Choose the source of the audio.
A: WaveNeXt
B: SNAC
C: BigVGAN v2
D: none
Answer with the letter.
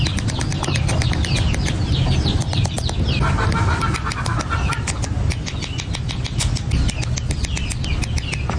D